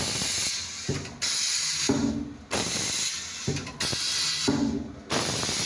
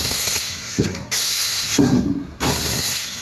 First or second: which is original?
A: first